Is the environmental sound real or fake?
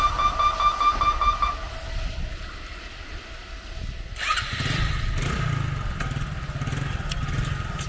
real